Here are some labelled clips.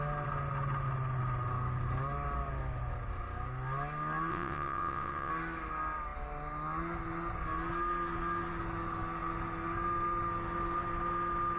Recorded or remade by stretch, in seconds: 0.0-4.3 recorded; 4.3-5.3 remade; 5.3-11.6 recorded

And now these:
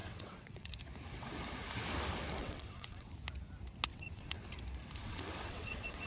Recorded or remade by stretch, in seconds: 0.0-0.7 remade; 0.7-2.4 recorded; 2.4-3.1 remade; 3.1-3.9 recorded; 3.9-4.5 remade; 4.5-5.0 recorded; 5.0-6.1 remade

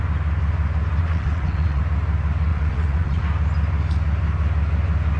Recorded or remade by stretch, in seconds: 0.0-1.0 recorded; 1.0-1.8 remade; 1.8-2.5 recorded; 2.5-3.2 remade; 3.2-5.2 recorded

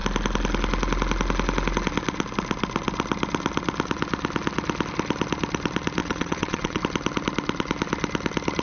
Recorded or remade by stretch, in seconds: 0.0-6.0 recorded; 6.0-6.8 remade; 6.8-8.6 recorded

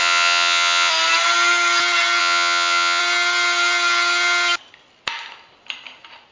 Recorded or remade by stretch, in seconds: 0.0-0.9 remade; 0.9-2.2 recorded; 2.2-3.0 remade; 3.0-6.3 recorded